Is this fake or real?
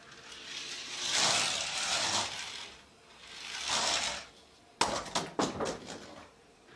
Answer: real